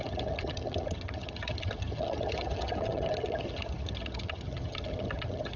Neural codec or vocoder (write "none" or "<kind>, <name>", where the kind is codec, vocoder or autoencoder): vocoder, HiFi-GAN